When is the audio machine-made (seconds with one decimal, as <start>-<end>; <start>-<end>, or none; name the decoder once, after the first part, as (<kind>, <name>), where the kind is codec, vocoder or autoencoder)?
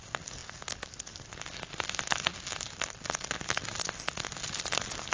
none